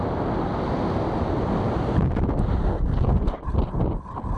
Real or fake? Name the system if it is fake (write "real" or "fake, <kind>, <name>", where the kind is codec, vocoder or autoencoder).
real